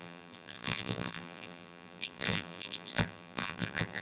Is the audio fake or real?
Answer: fake